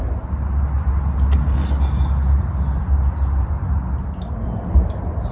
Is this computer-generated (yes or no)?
no